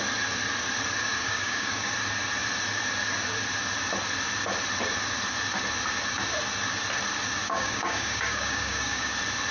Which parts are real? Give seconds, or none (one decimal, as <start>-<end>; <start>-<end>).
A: 0.0-1.2; 1.9-7.4; 9.1-9.5